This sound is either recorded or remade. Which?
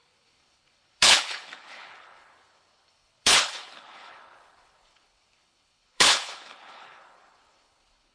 remade